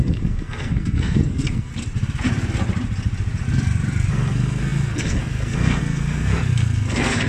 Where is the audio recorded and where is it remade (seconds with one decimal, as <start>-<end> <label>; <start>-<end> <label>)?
0.0-1.7 remade; 1.7-4.1 recorded; 4.1-7.3 remade